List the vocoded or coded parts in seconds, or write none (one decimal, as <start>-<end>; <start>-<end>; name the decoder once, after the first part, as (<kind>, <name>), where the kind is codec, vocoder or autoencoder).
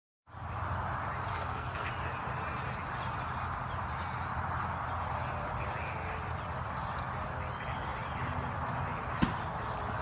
1.3-1.9 (codec, SNAC)